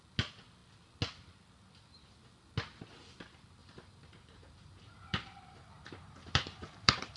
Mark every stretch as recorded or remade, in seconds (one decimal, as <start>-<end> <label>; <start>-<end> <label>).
0.0-3.6 recorded; 3.6-7.2 remade